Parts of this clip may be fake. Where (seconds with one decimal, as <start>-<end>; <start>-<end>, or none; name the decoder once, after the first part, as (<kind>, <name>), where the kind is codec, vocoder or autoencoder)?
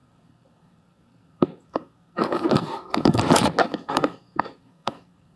0.0-3.2 (codec, SNAC); 3.6-5.4